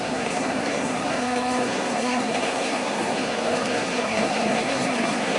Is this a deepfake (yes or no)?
yes